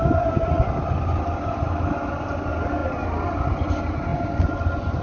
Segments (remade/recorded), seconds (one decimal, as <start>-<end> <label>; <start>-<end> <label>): 0.0-5.0 recorded

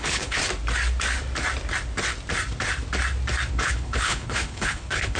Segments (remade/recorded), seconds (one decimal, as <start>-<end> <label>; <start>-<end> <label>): 0.0-0.4 remade; 0.4-3.5 recorded; 3.5-5.2 remade

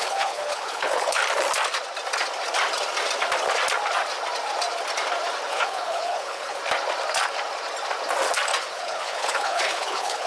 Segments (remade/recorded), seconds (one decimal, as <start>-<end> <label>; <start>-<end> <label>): 0.0-1.2 remade; 1.2-5.5 recorded; 5.5-6.6 remade; 6.6-8.6 recorded; 8.6-10.3 remade

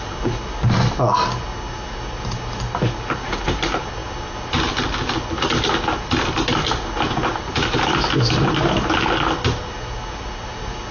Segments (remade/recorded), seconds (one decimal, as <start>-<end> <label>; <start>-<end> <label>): 0.0-10.9 recorded

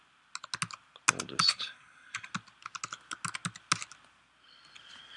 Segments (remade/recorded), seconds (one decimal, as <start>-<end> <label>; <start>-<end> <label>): 0.0-1.5 recorded; 1.5-2.3 remade; 2.3-5.2 recorded